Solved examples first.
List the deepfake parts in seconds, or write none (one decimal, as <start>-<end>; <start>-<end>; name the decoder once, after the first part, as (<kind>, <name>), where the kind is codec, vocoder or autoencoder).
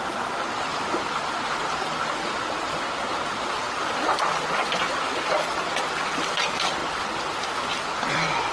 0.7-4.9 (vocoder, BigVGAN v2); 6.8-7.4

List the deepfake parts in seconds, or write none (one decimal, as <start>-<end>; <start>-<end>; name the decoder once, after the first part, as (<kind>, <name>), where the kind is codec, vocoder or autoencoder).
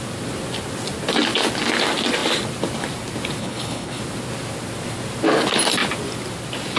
3.4-4.0 (codec, HILCodec)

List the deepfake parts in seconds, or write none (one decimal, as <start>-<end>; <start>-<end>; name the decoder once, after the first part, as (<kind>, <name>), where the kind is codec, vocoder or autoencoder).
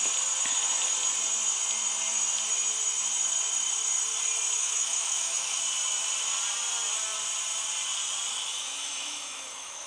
4.6-5.6 (autoencoder, DAC-VAE); 8.3-9.9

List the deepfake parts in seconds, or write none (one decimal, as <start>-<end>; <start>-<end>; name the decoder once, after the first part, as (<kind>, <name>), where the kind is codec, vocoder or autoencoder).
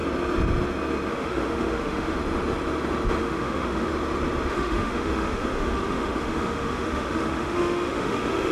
1.1-2.2 (autoencoder, DAC-VAE); 3.2-3.9; 4.5-8.5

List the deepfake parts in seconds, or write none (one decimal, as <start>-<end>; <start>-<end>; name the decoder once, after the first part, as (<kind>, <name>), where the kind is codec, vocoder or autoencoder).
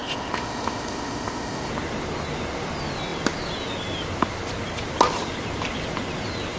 0.0-1.7 (codec, ZipCodec)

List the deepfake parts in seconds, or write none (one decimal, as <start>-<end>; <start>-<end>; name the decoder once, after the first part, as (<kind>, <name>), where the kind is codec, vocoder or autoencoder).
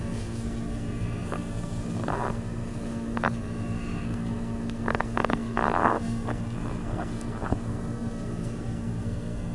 0.0-9.5 (codec, SNAC)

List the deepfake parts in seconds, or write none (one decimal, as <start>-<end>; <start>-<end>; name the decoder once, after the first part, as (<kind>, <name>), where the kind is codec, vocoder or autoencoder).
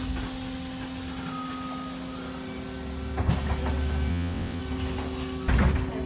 4.1-4.6 (vocoder, WaveNeXt)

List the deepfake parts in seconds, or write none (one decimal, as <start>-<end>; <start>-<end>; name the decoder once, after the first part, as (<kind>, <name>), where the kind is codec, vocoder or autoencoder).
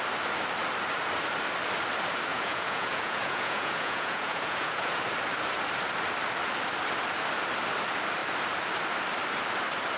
2.3-5.0 (vocoder, Vocos)